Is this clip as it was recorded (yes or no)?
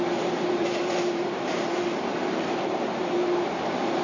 no